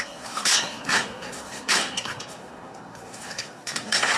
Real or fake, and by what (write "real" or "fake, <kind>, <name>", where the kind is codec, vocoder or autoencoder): fake, codec, SNAC